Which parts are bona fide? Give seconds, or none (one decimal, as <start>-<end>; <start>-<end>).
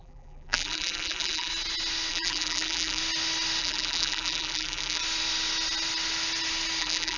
1.5-2.1; 3.0-3.6; 5.0-6.8